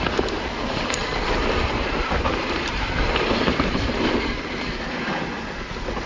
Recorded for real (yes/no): yes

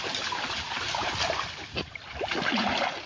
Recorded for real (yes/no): no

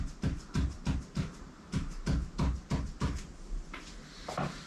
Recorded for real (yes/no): yes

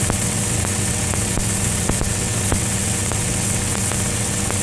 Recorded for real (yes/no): no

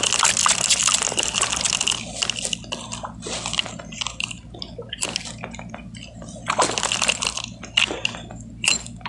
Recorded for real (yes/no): yes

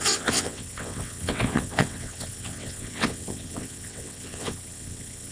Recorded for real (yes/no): no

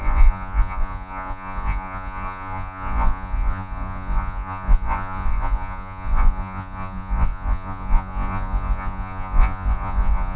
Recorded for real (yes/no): no